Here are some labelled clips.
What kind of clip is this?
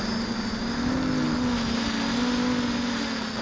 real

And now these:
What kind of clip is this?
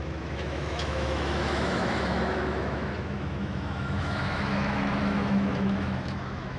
fake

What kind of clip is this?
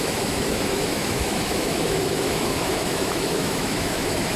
fake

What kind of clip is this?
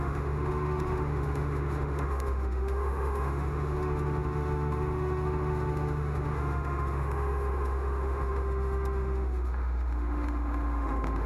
fake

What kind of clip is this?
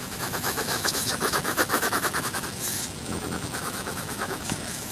fake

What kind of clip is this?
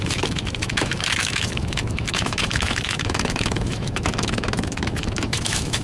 fake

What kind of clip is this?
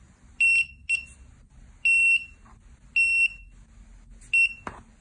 real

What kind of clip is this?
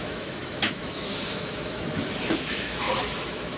fake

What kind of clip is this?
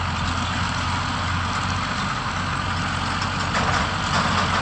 real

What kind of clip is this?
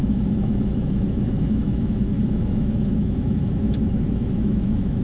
fake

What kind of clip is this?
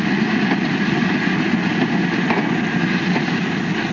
real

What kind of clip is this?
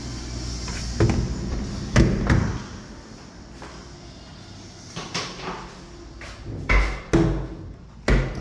real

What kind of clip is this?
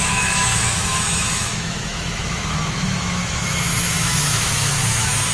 fake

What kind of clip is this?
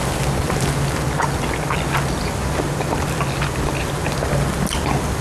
real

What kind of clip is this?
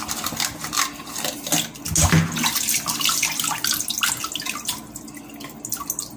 real